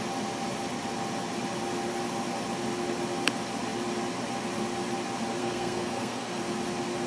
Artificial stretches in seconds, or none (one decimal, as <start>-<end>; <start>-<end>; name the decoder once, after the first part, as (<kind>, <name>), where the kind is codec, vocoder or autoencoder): 5.4-6.4 (codec, SNAC)

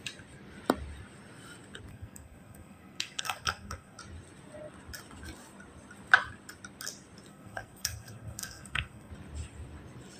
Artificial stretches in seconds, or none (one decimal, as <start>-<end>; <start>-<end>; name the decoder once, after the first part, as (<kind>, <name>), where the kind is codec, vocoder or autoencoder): 1.9-4.0 (codec, SNAC); 7.3-9.1

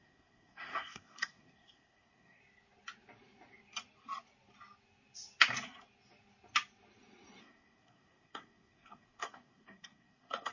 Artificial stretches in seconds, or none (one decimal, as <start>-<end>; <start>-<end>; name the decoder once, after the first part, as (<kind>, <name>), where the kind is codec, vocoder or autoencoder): 0.0-2.4 (codec, SNAC); 7.4-10.5

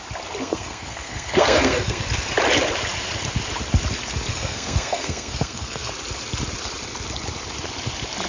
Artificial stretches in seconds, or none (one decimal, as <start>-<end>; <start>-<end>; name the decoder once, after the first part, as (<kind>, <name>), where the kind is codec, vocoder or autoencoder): 0.4-2.0 (codec, SNAC); 4.3-5.9

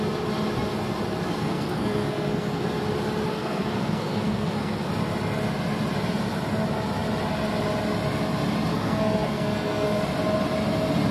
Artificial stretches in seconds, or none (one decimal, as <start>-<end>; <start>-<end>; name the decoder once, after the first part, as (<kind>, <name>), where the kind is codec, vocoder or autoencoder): 1.4-2.8 (codec, SNAC); 3.3-4.9; 8.7-10.0